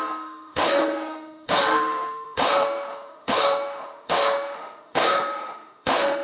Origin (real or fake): fake